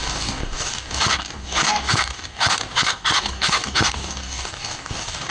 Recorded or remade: remade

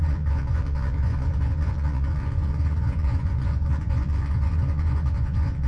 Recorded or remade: remade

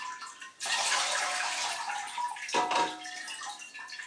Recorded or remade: recorded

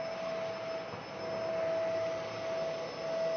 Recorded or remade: recorded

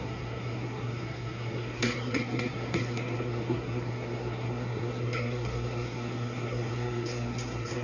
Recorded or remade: remade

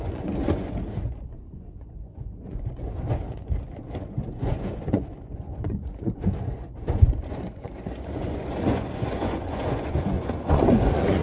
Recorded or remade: remade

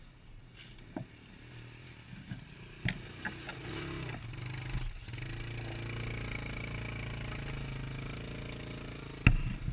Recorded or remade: recorded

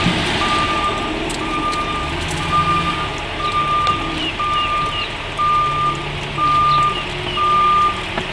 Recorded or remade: recorded